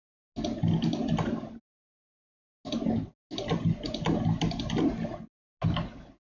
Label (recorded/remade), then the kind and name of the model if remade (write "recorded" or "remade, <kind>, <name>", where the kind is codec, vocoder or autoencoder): recorded